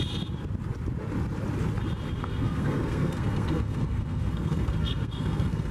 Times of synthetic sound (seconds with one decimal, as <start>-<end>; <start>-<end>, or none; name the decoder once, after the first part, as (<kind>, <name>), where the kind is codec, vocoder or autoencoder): 2.2-5.7 (codec, SNAC)